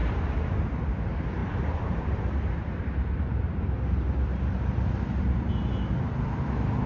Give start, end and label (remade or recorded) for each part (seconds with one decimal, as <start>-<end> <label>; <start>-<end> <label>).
0.0-0.9 remade; 0.9-1.4 recorded; 1.4-5.5 remade; 5.5-6.9 recorded